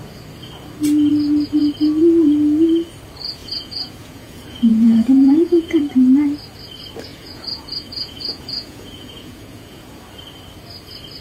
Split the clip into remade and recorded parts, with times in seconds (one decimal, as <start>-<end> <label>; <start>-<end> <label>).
0.0-3.4 recorded; 3.4-5.8 remade; 5.8-7.1 recorded; 7.1-10.0 remade; 10.0-11.2 recorded